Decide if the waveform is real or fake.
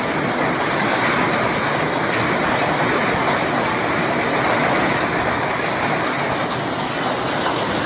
real